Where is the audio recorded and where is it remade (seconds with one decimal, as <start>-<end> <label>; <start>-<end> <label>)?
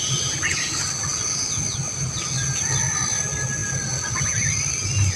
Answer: 0.0-5.2 recorded